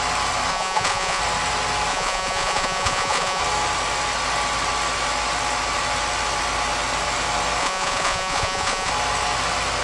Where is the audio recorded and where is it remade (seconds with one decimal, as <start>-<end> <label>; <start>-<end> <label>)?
0.0-0.5 recorded; 0.5-1.2 remade; 1.2-1.9 recorded; 1.9-3.4 remade; 3.4-7.6 recorded; 7.6-8.9 remade; 8.9-9.8 recorded